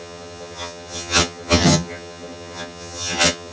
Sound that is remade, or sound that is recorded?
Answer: remade